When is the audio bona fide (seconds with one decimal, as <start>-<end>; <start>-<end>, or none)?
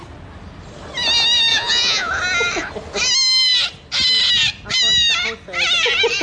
0.0-1.5; 2.1-6.2